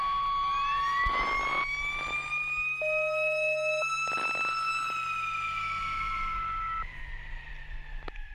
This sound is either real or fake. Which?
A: real